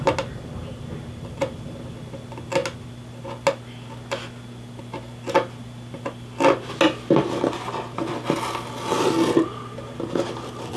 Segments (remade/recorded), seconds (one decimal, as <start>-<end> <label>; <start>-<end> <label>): 0.0-10.8 recorded